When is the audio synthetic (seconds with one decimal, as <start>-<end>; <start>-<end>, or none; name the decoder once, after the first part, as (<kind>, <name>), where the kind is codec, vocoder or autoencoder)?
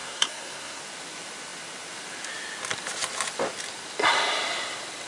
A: 0.0-0.8 (codec, SNAC)